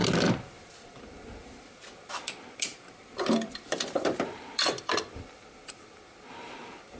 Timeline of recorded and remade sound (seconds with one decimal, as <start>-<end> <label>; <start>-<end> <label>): 0.0-0.6 recorded; 0.6-7.0 remade